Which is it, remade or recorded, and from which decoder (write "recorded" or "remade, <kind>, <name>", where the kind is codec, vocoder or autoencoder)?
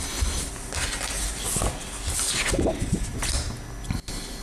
recorded